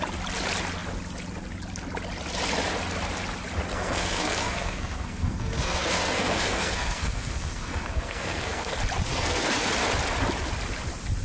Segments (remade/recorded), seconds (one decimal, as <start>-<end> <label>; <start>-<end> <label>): 0.0-3.7 recorded; 3.7-8.7 remade; 8.7-9.1 recorded; 9.1-9.7 remade; 9.7-11.2 recorded